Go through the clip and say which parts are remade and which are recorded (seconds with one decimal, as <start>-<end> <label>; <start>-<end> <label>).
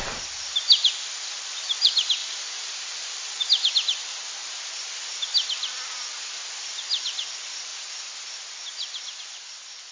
0.0-2.2 recorded; 2.2-3.5 remade; 3.5-9.9 recorded